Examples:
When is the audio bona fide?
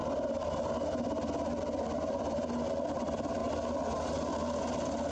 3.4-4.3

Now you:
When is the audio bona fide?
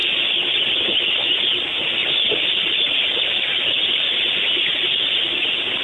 0.0-5.8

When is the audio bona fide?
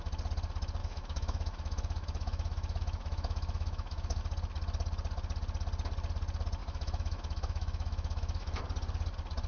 0.0-0.8; 4.2-6.6; 8.6-9.5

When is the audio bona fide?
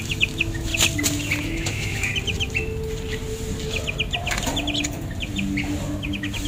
0.7-1.4; 2.1-6.0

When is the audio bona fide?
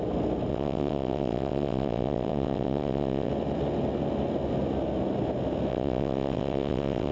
0.0-0.5; 3.3-5.7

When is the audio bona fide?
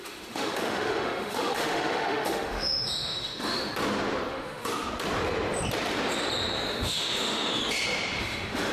3.7-4.3; 4.7-6.7; 7.6-8.2